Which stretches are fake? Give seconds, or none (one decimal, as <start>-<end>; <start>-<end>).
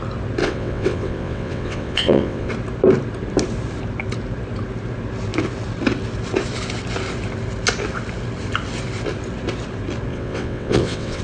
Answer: 0.4-2.5; 10.1-11.2